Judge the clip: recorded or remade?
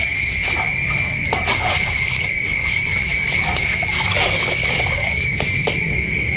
remade